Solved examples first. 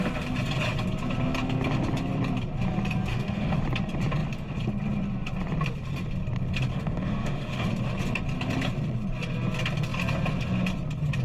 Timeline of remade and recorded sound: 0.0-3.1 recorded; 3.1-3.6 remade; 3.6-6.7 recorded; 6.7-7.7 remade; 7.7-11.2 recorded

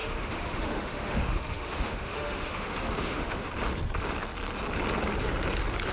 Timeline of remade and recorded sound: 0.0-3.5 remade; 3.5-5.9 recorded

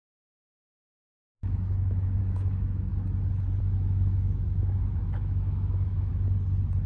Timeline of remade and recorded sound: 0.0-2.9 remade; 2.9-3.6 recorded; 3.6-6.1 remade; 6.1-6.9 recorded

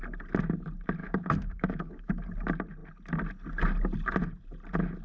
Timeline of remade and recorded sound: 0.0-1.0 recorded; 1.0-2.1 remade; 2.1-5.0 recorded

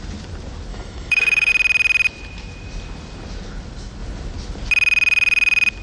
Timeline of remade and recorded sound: 0.0-0.7 recorded; 0.7-1.5 remade; 1.5-5.8 recorded

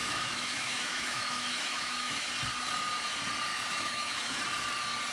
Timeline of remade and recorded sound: 0.0-2.3 remade; 2.3-3.5 recorded; 3.5-4.4 remade; 4.4-5.1 recorded

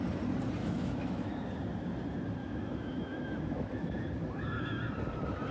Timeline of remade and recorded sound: 0.0-0.6 recorded; 0.6-1.3 remade; 1.3-2.4 recorded; 2.4-4.1 remade; 4.1-5.5 recorded

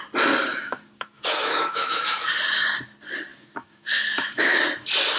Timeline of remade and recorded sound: 0.0-0.5 recorded; 0.5-2.3 remade; 2.3-3.3 recorded; 3.3-4.6 remade; 4.6-5.2 recorded